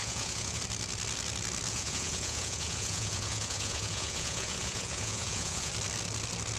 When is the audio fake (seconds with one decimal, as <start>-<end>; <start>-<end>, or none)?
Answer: 0.0-0.6; 1.7-5.7